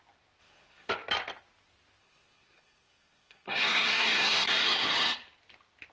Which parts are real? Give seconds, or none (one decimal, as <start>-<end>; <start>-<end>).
0.0-0.4; 0.9-2.0; 4.9-5.9